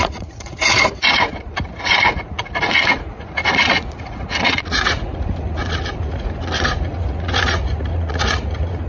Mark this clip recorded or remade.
remade